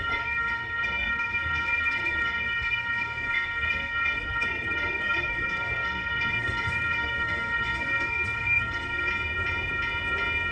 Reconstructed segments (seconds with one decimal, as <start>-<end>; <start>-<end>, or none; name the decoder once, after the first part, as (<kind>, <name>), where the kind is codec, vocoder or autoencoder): 0.0-9.1 (codec, SNAC)